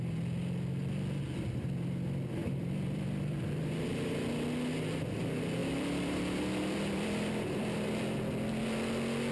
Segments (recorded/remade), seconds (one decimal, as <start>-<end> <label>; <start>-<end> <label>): 0.0-2.4 recorded; 2.4-4.1 remade; 4.1-5.6 recorded; 5.6-8.0 remade; 8.0-9.3 recorded